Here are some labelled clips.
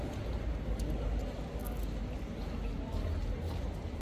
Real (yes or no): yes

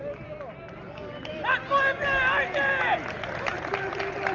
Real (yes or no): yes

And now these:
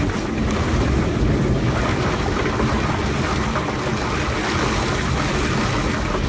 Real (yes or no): yes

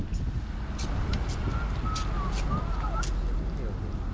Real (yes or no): yes